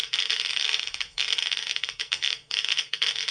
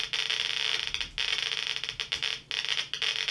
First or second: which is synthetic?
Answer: first